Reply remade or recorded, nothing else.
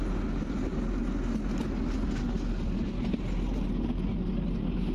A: recorded